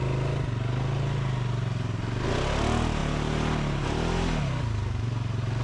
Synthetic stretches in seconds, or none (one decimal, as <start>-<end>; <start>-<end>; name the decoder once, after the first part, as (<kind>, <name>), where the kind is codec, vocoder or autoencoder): none